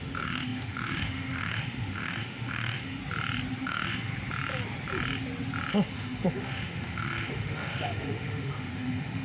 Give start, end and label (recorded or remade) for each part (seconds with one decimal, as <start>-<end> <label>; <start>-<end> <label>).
0.0-3.0 remade; 3.0-3.6 recorded; 3.6-4.1 remade; 4.1-5.7 recorded; 5.7-9.2 remade